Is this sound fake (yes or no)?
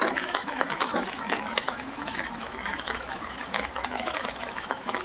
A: yes